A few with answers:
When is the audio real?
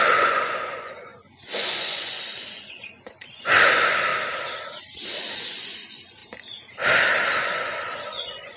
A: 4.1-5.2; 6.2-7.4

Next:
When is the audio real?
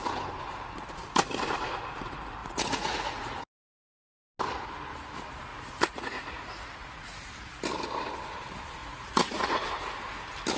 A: 0.0-2.4; 3.9-5.5; 7.3-8.8; 9.7-10.6